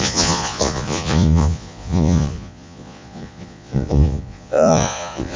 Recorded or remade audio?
remade